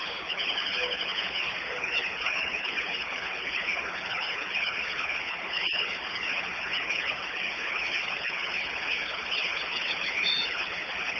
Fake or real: fake